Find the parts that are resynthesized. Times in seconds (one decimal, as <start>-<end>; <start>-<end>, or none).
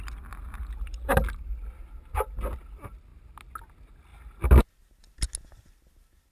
none